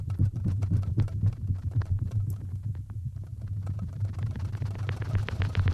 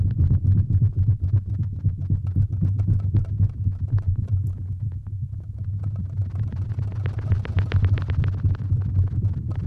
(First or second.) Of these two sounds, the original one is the second